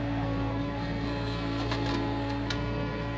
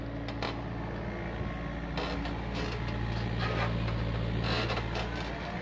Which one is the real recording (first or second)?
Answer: second